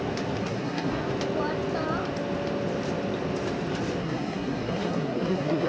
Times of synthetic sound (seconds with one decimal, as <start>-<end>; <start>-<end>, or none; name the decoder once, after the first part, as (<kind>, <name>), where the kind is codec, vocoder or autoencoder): 0.4-1.0 (codec, SNAC); 4.0-5.7